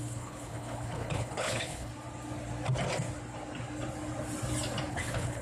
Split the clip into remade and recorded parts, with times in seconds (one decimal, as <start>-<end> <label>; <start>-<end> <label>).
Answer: 0.0-1.9 remade; 1.9-4.9 recorded; 4.9-5.4 remade